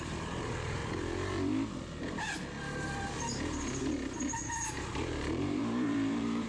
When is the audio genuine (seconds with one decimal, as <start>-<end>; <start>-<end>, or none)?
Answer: 0.8-4.7